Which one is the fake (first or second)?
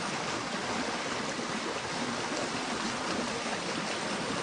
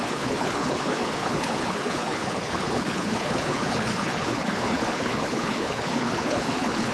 second